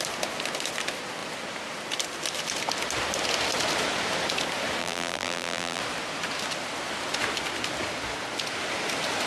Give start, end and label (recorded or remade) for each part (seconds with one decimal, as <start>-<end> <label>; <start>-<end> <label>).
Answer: 0.0-4.8 recorded; 4.8-5.8 remade; 5.8-9.3 recorded